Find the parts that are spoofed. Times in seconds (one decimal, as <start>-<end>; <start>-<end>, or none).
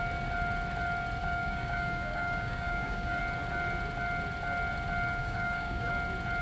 1.2-3.2; 5.2-5.9